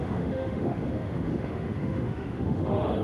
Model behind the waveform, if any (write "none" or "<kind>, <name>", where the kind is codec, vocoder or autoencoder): autoencoder, DAC-VAE